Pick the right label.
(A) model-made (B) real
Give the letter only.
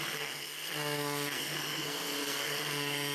A